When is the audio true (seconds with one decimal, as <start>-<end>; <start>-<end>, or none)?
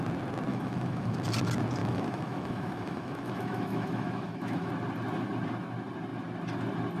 0.0-0.5; 1.2-1.8; 4.7-7.0